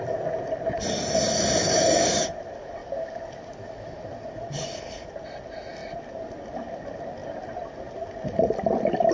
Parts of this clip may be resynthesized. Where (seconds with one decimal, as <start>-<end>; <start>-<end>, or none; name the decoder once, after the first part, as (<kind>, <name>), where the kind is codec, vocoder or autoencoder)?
1.6-2.3 (codec, DAC)